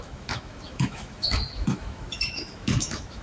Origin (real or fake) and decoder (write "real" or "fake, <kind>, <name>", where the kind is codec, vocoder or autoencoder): fake, autoencoder, DAC-VAE